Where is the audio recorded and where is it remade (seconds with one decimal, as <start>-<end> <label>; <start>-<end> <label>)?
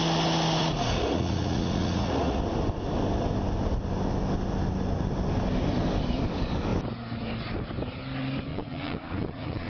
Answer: 0.0-0.6 recorded; 0.6-2.4 remade; 2.4-8.5 recorded; 8.5-9.7 remade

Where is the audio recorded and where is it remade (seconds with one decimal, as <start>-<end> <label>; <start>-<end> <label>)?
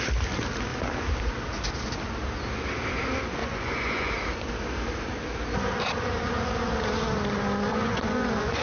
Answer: 0.0-3.4 recorded; 3.4-4.1 remade; 4.1-7.7 recorded; 7.7-8.6 remade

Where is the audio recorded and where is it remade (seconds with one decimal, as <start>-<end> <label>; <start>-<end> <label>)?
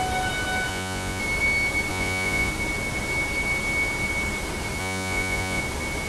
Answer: 0.0-0.7 recorded; 0.7-1.2 remade; 1.2-1.9 recorded; 1.9-2.5 remade; 2.5-4.8 recorded; 4.8-5.6 remade; 5.6-6.1 recorded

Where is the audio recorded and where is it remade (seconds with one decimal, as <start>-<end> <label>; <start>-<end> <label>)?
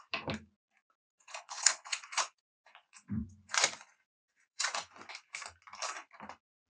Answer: 0.0-1.1 recorded; 1.1-5.1 remade; 5.1-6.7 recorded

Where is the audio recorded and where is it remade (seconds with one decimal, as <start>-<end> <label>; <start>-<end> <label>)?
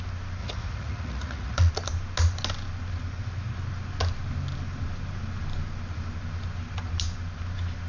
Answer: 0.0-0.4 recorded; 0.4-1.7 remade; 1.7-7.9 recorded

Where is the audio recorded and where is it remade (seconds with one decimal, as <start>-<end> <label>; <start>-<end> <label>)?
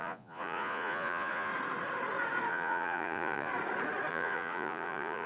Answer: 0.0-1.5 remade; 1.5-2.5 recorded; 2.5-3.5 remade; 3.5-4.1 recorded; 4.1-5.3 remade